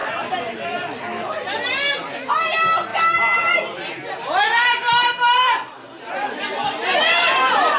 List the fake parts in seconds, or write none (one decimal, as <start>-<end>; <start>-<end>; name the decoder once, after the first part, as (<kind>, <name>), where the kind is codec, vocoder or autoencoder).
none